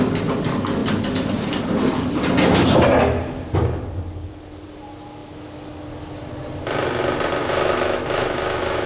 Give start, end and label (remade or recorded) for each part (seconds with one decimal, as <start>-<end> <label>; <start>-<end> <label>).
0.0-7.4 recorded; 7.4-8.9 remade